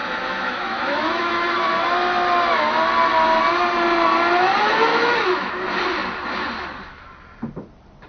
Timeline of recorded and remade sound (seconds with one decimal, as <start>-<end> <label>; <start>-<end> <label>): 0.0-1.7 remade; 1.7-4.9 recorded; 4.9-5.5 remade; 5.5-8.1 recorded